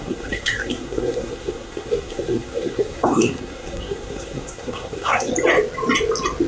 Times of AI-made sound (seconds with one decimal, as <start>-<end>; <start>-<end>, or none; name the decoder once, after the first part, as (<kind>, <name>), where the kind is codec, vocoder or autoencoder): 0.0-5.3 (codec, SNAC)